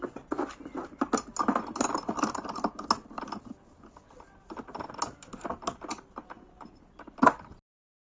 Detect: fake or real real